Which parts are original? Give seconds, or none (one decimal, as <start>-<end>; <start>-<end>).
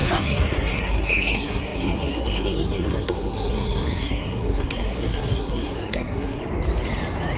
6.4-7.4